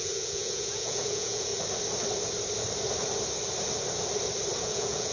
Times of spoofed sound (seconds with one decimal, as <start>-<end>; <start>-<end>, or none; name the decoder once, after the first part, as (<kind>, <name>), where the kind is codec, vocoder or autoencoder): 0.0-1.5 (vocoder, Vocos); 4.6-5.1